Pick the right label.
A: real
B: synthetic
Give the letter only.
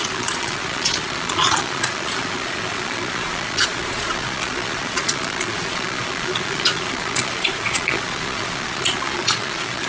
B